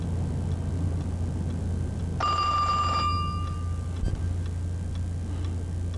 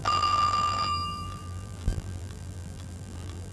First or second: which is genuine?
first